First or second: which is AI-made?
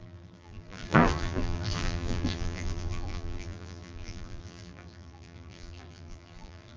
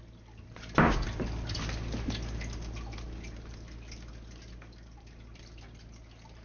first